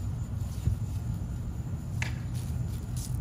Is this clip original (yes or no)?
yes